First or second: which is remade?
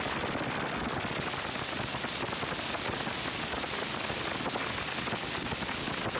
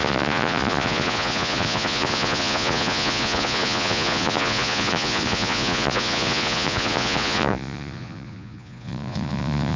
second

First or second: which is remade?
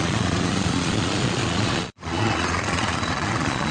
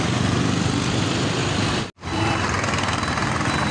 first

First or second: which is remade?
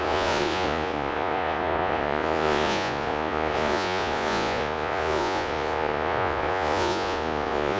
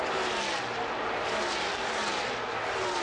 first